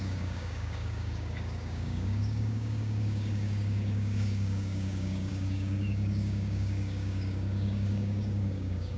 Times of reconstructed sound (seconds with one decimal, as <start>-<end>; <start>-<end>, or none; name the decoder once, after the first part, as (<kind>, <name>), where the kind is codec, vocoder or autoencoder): 0.0-9.0 (codec, DAC)